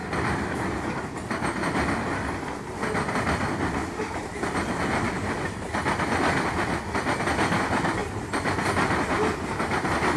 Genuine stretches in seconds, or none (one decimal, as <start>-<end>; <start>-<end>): 1.1-3.8; 4.8-8.0